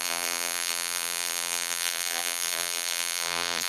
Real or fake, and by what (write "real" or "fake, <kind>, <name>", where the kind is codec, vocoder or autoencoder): fake, vocoder, BigVGAN v2